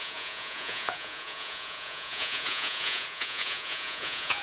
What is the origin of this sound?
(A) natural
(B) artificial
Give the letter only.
B